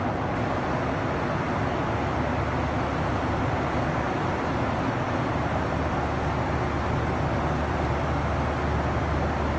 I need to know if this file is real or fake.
real